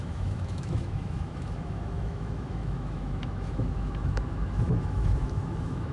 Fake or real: fake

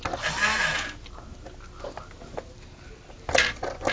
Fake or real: real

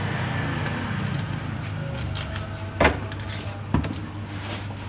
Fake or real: real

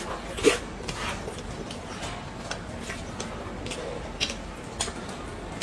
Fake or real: real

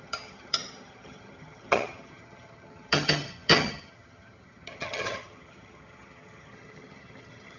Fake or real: fake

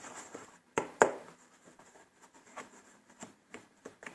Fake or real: fake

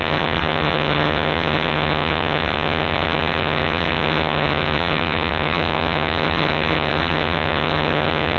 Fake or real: fake